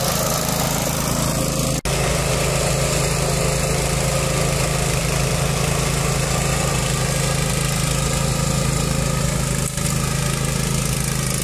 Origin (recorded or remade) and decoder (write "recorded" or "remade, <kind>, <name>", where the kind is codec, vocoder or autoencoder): recorded